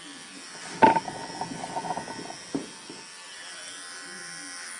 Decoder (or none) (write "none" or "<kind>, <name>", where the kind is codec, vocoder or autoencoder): none